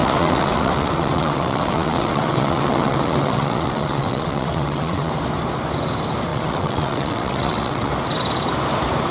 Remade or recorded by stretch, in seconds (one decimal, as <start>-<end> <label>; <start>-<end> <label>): 0.0-5.1 remade; 5.1-6.3 recorded; 6.3-7.9 remade; 7.9-9.1 recorded